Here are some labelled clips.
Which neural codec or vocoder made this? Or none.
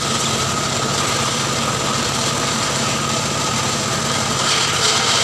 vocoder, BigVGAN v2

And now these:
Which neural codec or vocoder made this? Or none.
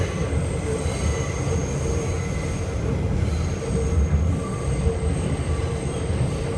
none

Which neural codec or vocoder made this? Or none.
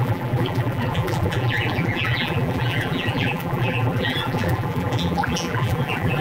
vocoder, BigVGAN v2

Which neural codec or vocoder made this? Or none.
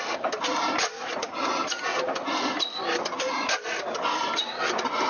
none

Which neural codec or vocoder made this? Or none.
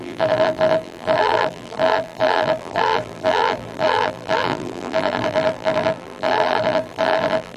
vocoder, BigVGAN v2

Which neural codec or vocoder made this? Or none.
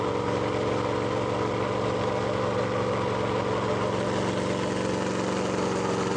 none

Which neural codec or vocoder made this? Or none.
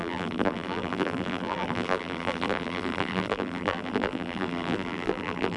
vocoder, BigVGAN v2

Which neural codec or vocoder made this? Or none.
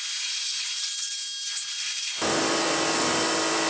vocoder, BigVGAN v2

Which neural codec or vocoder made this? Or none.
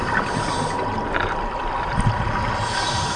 none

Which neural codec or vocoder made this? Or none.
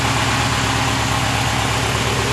none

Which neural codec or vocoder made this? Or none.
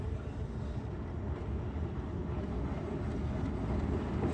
none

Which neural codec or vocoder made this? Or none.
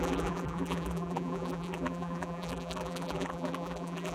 vocoder, BigVGAN v2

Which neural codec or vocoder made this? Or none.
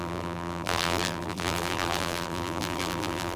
vocoder, BigVGAN v2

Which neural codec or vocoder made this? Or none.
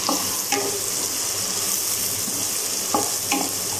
none